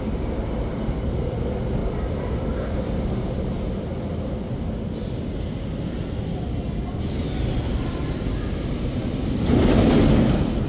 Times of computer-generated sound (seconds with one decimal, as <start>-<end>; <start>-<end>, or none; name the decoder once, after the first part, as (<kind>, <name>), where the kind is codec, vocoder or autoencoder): none